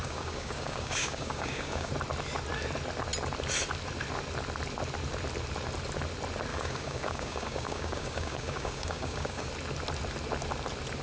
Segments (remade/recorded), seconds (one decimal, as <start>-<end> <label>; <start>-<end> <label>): 0.0-1.9 remade; 1.9-6.5 recorded; 6.5-9.5 remade; 9.5-11.0 recorded